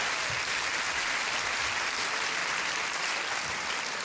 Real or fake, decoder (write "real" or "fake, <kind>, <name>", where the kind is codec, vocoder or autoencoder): real